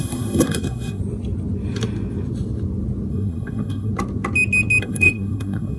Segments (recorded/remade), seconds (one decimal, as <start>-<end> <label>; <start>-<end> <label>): 0.0-1.0 remade; 1.0-3.1 recorded; 3.1-3.9 remade; 3.9-4.8 recorded; 4.8-5.8 remade